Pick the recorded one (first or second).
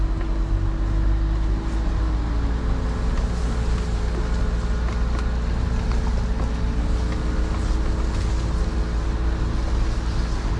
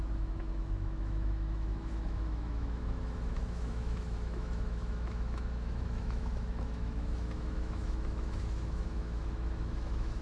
first